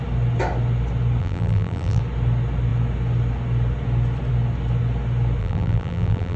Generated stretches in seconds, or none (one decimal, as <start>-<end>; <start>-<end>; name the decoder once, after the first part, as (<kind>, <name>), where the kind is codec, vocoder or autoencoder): 1.2-2.0 (vocoder, BigVGAN v2); 5.4-6.4